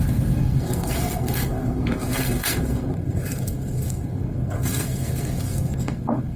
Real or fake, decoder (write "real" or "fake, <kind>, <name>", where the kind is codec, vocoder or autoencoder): fake, codec, SNAC